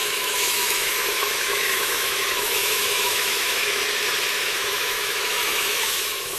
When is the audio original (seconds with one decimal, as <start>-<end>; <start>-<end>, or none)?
3.8-4.3